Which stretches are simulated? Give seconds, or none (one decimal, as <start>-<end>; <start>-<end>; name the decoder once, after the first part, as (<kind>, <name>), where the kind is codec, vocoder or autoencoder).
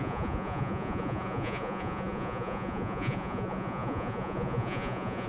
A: 0.0-5.3 (vocoder, Vocos)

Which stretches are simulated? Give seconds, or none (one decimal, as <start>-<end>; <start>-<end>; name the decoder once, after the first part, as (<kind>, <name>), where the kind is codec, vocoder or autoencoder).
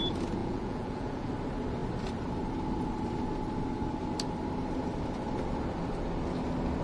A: 0.4-1.3 (vocoder, Vocos)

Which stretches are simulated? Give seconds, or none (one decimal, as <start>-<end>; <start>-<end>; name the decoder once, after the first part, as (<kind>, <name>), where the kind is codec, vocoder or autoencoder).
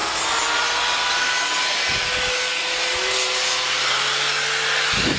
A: none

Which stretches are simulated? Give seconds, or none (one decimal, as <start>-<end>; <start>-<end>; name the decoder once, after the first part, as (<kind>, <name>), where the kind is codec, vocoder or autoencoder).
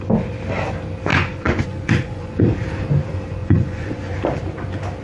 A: 1.1-2.4 (vocoder, Vocos); 3.4-4.1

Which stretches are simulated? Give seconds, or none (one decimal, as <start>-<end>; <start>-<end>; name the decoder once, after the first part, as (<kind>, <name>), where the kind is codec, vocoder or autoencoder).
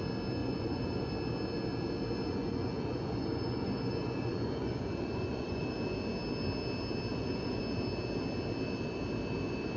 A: 0.4-1.1 (vocoder, Vocos); 2.3-5.6; 7.1-7.6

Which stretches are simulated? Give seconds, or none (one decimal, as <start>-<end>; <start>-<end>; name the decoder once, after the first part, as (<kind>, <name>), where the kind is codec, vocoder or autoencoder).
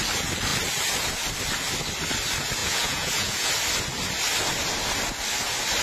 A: 2.6-3.5 (vocoder, Vocos)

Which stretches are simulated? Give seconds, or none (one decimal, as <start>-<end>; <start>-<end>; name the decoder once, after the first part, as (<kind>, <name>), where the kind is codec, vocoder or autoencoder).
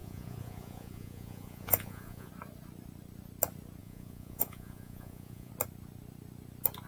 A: 0.0-2.3 (vocoder, Vocos); 3.8-5.5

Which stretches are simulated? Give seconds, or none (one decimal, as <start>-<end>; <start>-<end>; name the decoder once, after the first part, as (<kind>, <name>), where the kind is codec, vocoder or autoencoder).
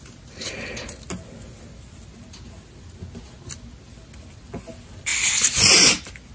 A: none